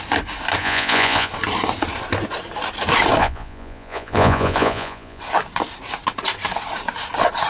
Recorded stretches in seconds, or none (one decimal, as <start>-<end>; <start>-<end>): 0.0-0.6; 1.3-3.2; 5.2-7.5